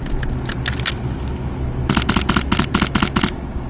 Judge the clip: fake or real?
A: real